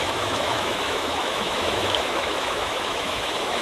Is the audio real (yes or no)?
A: no